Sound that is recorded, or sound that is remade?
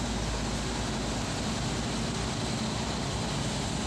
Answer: recorded